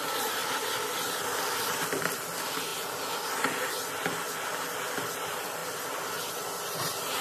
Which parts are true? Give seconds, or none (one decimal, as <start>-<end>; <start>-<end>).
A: 2.7-5.1; 5.6-6.3